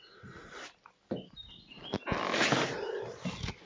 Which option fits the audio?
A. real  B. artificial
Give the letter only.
A